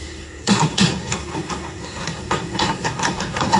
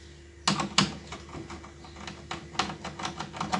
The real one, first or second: second